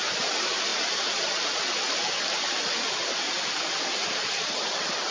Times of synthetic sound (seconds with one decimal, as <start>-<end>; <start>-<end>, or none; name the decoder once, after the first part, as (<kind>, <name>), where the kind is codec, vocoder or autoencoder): none